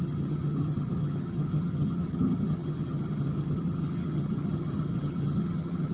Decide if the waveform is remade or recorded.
remade